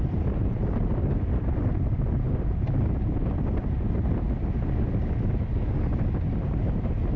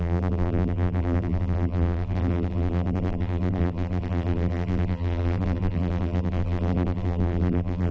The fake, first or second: second